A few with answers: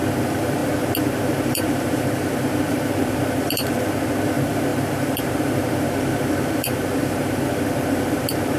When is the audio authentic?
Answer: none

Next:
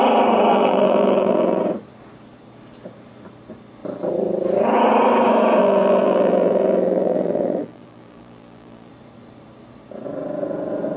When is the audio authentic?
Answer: 0.0-0.5; 1.6-5.6; 8.9-11.0

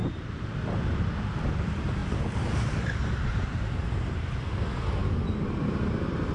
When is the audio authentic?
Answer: 0.0-2.0; 4.2-6.3

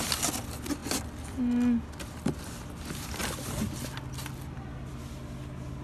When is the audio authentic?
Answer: 0.0-5.8

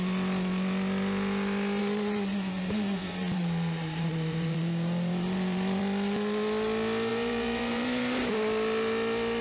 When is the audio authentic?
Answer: 0.0-1.8; 5.8-7.1; 8.3-9.4

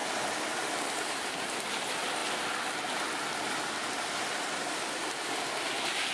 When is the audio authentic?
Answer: 0.0-6.1